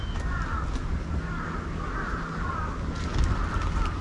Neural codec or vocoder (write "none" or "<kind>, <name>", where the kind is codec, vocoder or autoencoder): none